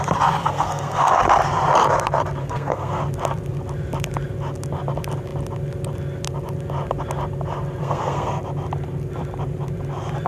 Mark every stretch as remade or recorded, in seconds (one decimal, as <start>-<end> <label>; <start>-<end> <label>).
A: 0.0-0.4 recorded; 0.4-1.2 remade; 1.2-2.4 recorded; 2.4-3.0 remade; 3.0-7.8 recorded; 7.8-8.4 remade; 8.4-10.3 recorded